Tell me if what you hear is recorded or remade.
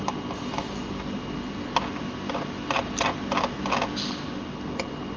recorded